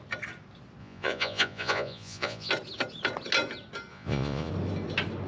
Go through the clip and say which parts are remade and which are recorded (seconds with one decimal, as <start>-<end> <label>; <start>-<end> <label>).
0.0-0.8 recorded; 0.8-2.5 remade; 2.5-3.9 recorded; 3.9-4.5 remade; 4.5-5.3 recorded